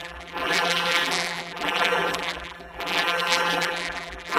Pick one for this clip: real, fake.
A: fake